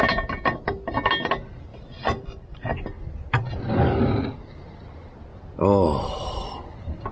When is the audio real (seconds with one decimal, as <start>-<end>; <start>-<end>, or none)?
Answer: 0.0-5.3